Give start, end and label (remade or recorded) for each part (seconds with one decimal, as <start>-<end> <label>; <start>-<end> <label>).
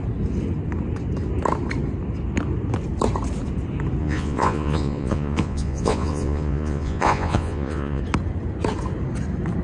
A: 0.0-4.0 recorded; 4.0-8.0 remade; 8.0-9.6 recorded